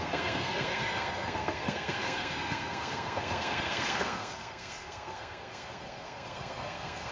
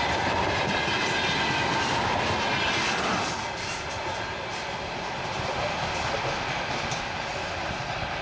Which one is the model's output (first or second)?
first